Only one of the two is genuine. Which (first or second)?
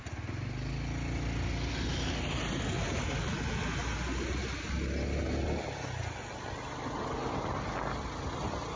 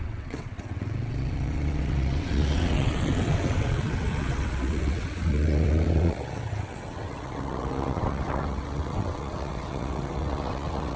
first